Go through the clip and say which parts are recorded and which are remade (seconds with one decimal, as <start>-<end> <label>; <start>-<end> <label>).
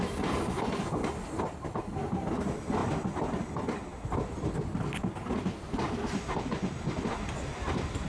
0.0-8.1 recorded